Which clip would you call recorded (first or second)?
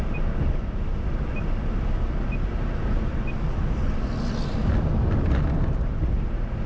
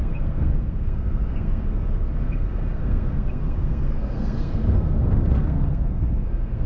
first